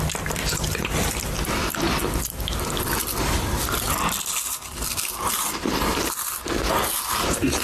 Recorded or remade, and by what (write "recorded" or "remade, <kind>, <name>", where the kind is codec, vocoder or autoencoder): recorded